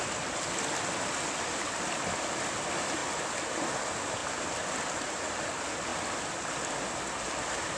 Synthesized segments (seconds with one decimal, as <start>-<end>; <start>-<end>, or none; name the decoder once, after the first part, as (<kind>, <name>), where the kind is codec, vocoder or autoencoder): none